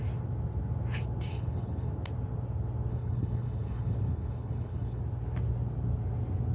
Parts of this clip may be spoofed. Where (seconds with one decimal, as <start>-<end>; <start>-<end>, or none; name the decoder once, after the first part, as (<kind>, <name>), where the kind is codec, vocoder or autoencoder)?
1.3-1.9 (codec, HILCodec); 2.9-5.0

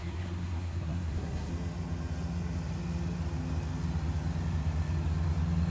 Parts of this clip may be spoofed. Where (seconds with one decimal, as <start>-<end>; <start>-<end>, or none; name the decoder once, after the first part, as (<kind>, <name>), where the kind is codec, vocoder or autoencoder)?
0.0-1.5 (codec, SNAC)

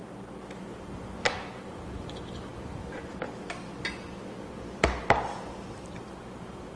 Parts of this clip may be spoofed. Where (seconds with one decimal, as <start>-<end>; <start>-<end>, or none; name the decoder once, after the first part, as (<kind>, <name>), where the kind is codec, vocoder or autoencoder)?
2.5-4.3 (vocoder, BigVGAN v2)

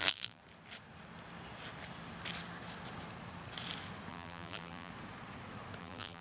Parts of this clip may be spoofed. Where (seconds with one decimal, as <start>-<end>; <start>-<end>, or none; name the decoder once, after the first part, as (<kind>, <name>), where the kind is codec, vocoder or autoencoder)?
0.0-0.4 (vocoder, BigVGAN v2); 4.1-4.9; 5.8-6.2

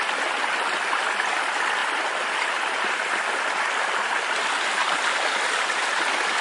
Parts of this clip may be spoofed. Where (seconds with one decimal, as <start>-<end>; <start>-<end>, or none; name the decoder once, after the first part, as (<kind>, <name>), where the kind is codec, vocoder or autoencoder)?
none

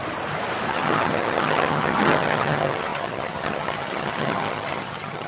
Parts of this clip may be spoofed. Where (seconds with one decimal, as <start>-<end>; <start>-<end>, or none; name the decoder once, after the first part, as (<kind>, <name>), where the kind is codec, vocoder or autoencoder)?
0.7-5.3 (vocoder, HiFi-GAN)